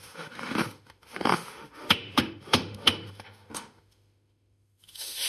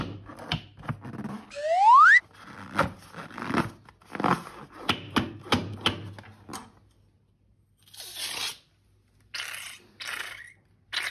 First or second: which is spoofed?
first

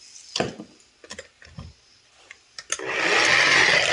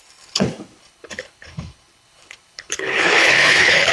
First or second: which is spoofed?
second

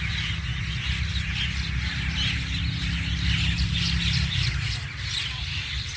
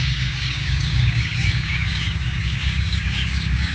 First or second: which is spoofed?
second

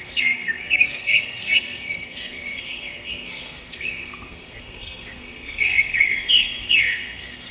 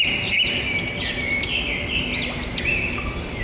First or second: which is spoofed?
first